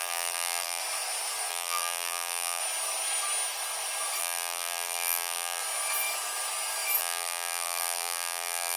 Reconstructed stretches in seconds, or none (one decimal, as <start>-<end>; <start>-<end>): 0.0-0.8; 1.5-2.6; 4.2-5.6; 7.0-8.8